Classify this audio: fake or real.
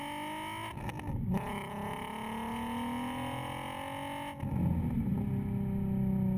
real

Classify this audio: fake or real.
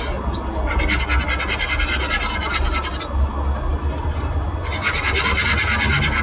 real